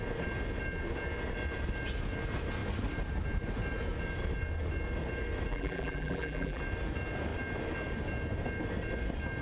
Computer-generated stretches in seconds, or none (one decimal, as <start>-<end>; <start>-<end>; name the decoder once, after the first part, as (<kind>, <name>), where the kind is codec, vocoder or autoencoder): 5.5-6.6 (vocoder, BigVGAN v2)